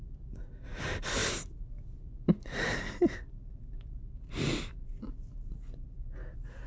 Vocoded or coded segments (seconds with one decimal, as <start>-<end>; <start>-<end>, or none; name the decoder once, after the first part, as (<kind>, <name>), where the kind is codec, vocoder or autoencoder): none